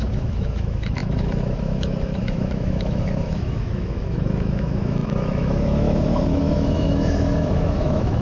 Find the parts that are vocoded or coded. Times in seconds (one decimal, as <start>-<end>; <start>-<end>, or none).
0.0-8.2